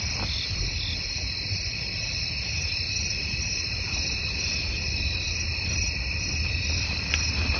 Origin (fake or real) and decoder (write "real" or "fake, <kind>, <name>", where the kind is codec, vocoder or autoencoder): fake, vocoder, BigVGAN v2